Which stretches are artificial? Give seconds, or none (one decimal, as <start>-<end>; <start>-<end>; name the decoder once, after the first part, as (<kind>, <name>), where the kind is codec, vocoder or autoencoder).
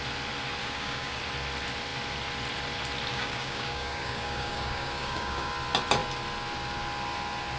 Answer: 0.6-1.2 (codec, DAC); 3.1-5.5